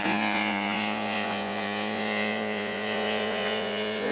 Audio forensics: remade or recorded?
remade